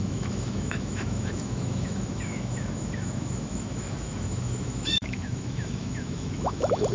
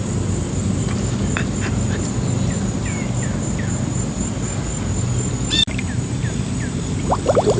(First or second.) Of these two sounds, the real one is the second